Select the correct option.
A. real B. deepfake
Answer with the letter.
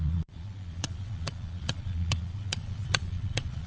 B